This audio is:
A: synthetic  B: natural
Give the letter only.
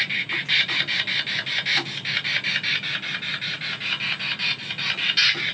B